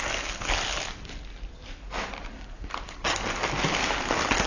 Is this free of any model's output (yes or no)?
yes